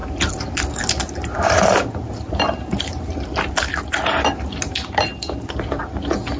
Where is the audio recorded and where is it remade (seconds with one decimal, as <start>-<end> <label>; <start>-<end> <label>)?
0.0-6.4 recorded